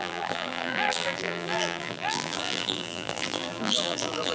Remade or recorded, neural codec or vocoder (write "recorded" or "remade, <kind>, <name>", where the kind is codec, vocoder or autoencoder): remade, vocoder, BigVGAN v2